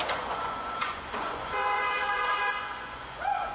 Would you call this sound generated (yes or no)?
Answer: yes